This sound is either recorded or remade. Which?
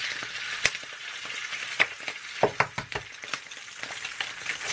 recorded